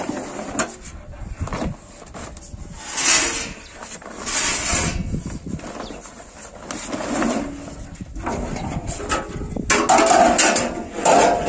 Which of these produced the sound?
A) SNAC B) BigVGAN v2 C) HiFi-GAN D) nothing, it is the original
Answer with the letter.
D